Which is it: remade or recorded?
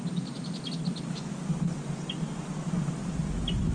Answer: recorded